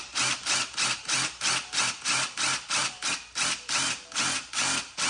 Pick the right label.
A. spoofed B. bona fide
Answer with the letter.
A